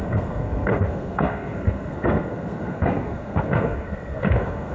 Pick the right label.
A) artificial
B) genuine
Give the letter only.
A